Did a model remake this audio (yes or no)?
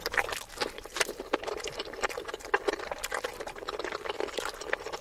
no